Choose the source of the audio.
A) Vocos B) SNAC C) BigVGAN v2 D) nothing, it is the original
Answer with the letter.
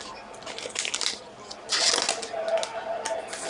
D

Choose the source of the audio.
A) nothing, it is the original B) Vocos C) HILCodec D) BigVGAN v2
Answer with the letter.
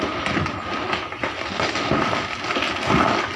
A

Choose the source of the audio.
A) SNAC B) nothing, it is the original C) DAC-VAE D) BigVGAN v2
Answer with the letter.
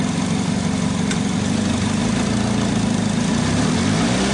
B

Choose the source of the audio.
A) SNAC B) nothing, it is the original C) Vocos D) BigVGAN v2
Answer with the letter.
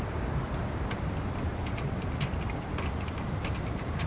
D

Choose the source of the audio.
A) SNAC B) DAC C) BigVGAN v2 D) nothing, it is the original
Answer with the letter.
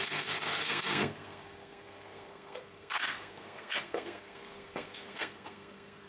A